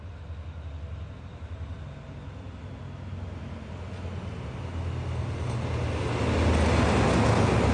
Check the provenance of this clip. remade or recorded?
recorded